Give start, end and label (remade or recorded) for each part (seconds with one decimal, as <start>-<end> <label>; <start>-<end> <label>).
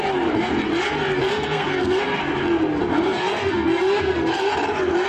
0.0-1.3 recorded; 1.3-2.2 remade; 2.2-2.9 recorded; 2.9-4.5 remade; 4.5-5.1 recorded